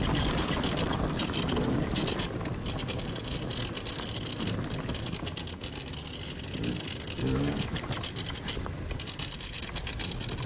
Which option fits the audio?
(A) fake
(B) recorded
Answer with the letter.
B